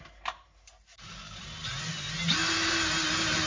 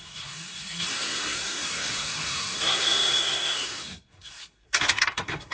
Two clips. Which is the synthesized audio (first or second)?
second